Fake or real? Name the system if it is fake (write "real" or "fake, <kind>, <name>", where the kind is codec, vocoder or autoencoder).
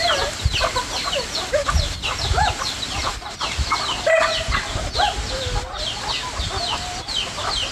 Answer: real